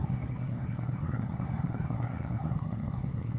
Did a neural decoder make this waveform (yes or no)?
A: yes